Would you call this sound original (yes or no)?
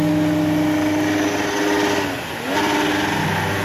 yes